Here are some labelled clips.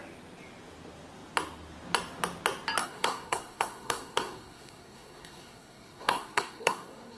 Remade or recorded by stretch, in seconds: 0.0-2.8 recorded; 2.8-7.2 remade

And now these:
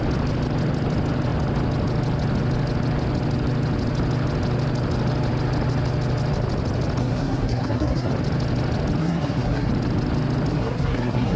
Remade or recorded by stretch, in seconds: 0.0-7.0 recorded; 7.0-8.1 remade; 8.1-9.0 recorded; 9.0-9.7 remade; 9.7-10.5 recorded; 10.5-11.4 remade

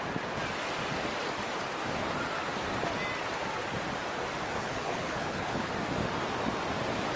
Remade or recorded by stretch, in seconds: 0.0-4.6 recorded; 4.6-5.7 remade; 5.7-7.2 recorded